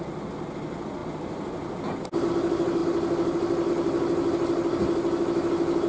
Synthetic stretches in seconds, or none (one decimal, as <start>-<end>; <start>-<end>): none